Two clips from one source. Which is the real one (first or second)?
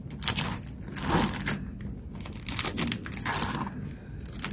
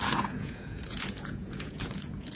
first